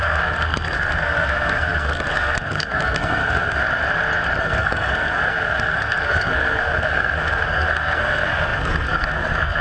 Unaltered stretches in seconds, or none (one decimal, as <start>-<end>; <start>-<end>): 3.6-4.4